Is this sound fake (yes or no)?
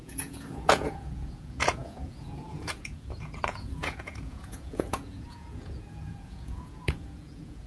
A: yes